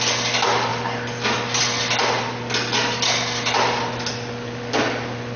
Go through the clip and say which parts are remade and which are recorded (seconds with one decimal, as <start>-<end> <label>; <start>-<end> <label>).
0.0-5.4 recorded